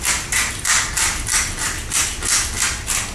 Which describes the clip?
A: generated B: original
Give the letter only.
B